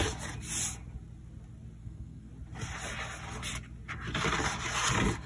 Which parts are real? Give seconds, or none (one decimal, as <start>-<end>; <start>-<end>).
0.0-1.8; 2.3-5.3